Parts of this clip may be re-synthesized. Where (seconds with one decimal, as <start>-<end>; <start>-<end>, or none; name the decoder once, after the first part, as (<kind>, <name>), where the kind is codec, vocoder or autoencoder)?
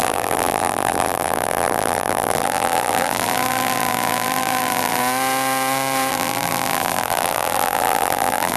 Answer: 0.0-5.0 (vocoder, BigVGAN v2); 6.1-8.6